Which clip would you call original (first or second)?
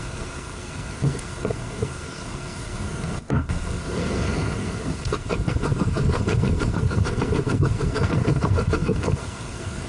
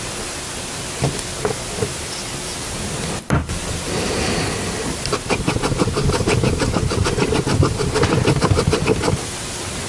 second